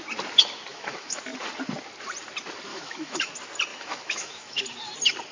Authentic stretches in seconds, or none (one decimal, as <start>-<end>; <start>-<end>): 0.0-0.7; 1.2-2.7; 3.3-3.7; 4.6-5.3